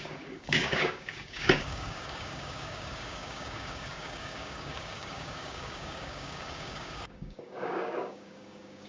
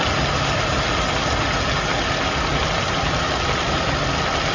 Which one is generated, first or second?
first